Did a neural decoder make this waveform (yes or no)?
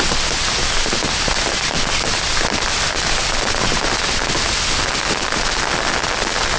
no